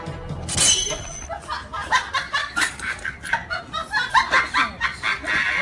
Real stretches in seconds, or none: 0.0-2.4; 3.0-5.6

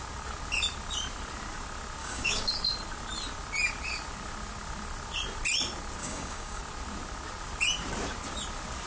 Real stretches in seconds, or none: 0.0-2.0; 2.5-6.0; 6.6-8.9

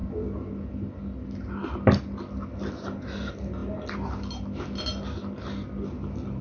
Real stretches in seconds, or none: 0.0-6.4

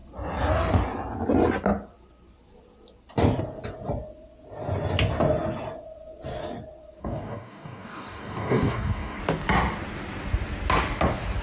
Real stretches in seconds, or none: 0.0-7.0; 9.2-11.4